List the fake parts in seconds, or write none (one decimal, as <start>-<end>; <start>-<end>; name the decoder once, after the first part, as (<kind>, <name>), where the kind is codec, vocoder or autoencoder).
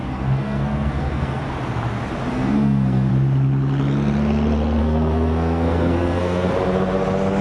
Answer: 0.0-1.4 (codec, SNAC); 2.3-3.1; 4.8-6.5